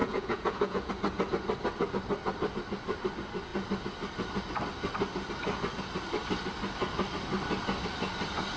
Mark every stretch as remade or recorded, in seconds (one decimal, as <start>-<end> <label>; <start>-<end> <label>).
0.0-0.9 remade; 0.9-8.6 recorded